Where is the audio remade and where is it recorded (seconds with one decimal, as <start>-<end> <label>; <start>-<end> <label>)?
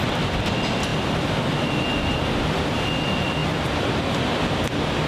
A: 0.0-3.4 recorded; 3.4-4.0 remade; 4.0-5.1 recorded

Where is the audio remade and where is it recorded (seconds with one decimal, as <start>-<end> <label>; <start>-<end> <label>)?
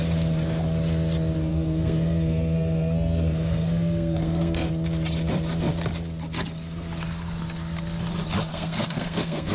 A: 0.0-1.5 recorded; 1.5-4.7 remade; 4.7-8.5 recorded; 8.5-9.5 remade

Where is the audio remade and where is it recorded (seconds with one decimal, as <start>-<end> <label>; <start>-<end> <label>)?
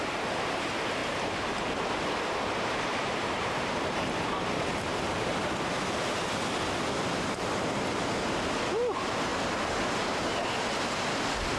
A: 0.0-1.0 recorded; 1.0-1.9 remade; 1.9-2.9 recorded; 2.9-5.3 remade; 5.3-11.6 recorded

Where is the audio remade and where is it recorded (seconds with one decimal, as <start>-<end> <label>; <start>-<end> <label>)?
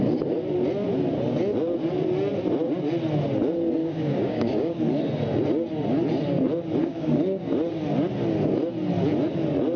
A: 0.0-3.8 recorded; 3.8-4.8 remade; 4.8-6.8 recorded; 6.8-7.4 remade; 7.4-9.8 recorded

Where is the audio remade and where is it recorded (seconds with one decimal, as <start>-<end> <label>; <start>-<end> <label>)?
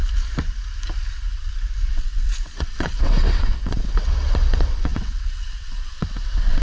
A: 0.0-1.9 recorded; 1.9-6.6 remade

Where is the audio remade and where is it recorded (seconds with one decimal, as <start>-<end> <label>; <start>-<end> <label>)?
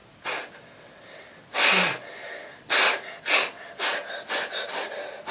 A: 0.0-5.3 recorded